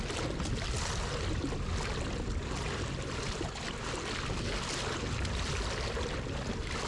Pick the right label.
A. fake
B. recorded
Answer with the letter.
B